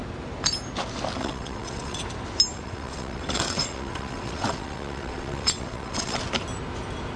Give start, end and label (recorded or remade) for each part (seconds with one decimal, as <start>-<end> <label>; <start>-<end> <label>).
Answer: 0.0-1.2 recorded; 1.2-2.0 remade; 2.0-2.5 recorded; 2.5-6.2 remade; 6.2-7.2 recorded